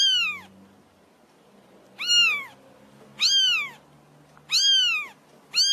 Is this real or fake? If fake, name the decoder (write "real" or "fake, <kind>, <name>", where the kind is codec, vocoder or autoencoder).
real